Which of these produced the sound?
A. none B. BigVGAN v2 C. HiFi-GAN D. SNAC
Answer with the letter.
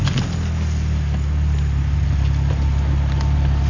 A